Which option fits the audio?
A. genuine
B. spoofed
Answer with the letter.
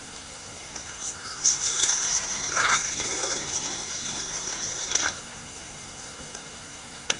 B